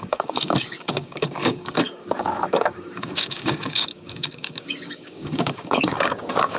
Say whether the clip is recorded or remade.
remade